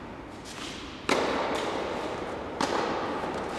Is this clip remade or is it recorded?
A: recorded